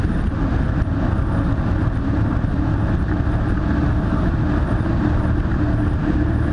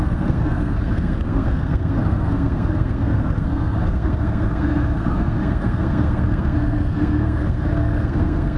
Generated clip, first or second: second